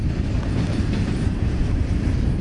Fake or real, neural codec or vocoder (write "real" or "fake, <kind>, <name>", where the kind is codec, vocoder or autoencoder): real